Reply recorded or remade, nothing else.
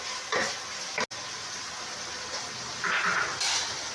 recorded